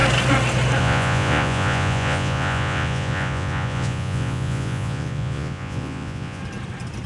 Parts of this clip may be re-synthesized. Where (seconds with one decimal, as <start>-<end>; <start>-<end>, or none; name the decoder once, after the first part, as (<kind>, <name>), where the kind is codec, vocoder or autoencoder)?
0.8-6.4 (vocoder, Vocos)